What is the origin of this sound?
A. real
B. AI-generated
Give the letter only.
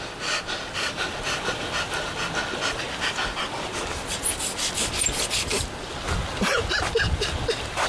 A